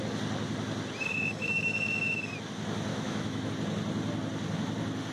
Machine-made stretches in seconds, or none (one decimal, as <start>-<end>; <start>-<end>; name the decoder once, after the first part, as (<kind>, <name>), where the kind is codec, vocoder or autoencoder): 1.1-2.3 (autoencoder, DAC-VAE); 2.9-3.5

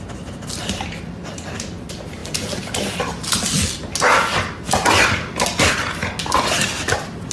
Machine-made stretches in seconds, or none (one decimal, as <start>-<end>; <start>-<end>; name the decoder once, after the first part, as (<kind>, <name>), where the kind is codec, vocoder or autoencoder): none

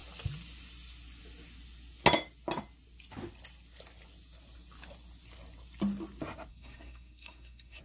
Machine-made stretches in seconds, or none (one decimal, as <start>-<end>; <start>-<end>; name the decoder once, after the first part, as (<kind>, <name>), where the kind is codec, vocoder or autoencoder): 6.5-7.8 (codec, SNAC)

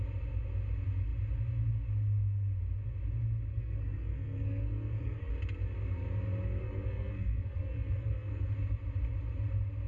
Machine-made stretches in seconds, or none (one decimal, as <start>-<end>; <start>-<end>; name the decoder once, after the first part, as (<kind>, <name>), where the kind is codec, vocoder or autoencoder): 3.5-5.3 (codec, SNAC); 6.6-8.5

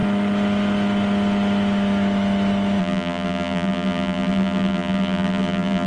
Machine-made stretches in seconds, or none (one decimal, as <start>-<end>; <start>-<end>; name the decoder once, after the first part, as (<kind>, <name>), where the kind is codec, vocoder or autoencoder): 2.8-5.9 (vocoder, BigVGAN v2)

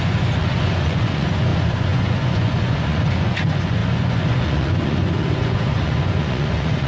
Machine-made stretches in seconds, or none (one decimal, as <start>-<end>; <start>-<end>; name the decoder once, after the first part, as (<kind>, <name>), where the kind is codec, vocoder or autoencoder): 0.0-6.9 (vocoder, Vocos)

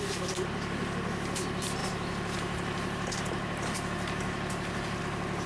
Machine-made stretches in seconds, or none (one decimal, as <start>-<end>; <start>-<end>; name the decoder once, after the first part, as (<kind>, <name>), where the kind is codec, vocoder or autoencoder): 1.8-5.0 (vocoder, BigVGAN v2)